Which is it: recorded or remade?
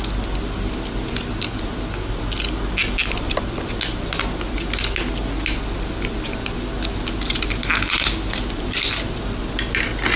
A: recorded